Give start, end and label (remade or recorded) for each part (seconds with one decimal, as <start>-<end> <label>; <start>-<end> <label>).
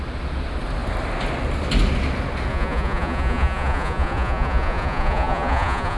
0.0-2.5 recorded; 2.5-6.0 remade